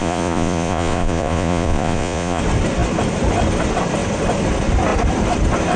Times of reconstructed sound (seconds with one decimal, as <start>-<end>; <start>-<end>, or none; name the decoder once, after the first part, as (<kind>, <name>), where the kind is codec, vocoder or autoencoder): 0.0-2.4 (vocoder, Vocos)